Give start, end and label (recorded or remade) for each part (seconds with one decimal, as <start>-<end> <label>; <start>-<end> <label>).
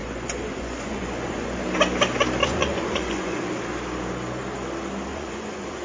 0.0-1.6 remade; 1.6-2.4 recorded; 2.4-3.4 remade; 3.4-5.1 recorded; 5.1-5.8 remade